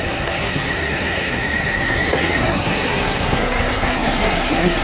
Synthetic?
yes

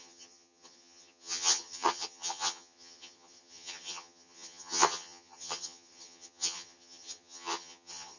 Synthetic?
yes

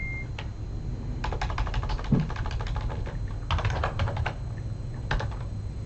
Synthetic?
no